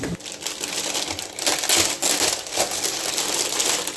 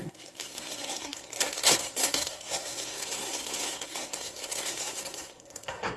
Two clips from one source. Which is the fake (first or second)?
second